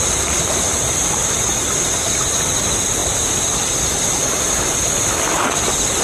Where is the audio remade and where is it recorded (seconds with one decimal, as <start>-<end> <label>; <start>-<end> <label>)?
0.0-6.0 recorded